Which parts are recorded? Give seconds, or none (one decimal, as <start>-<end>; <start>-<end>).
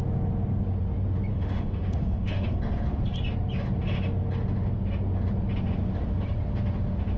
0.0-1.3; 2.6-7.2